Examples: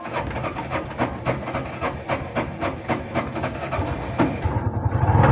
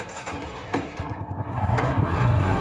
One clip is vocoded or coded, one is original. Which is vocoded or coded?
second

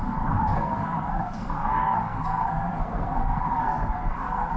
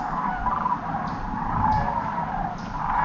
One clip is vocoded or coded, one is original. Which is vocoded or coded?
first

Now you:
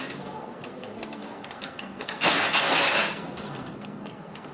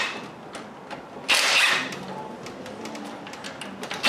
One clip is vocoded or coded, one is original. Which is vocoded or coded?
first